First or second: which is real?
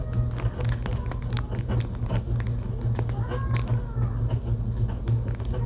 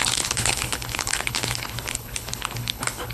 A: first